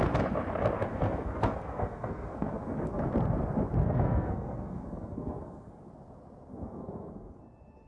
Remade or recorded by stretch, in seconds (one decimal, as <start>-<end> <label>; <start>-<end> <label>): 0.0-0.8 recorded; 0.8-3.0 remade; 3.0-3.8 recorded; 3.8-5.9 remade; 5.9-6.5 recorded; 6.5-7.4 remade; 7.4-7.9 recorded